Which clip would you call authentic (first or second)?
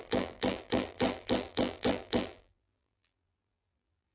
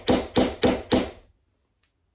second